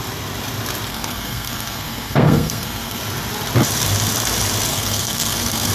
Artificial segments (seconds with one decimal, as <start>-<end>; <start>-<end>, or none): 0.9-3.0; 4.7-5.7